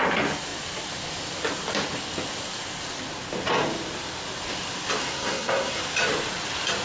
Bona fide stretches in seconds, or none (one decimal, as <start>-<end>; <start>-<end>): 0.0-5.0; 5.8-6.8